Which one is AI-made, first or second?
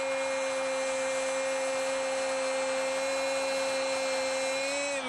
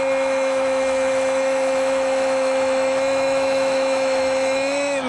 second